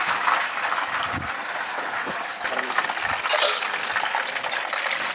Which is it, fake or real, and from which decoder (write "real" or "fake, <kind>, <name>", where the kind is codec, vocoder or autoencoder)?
real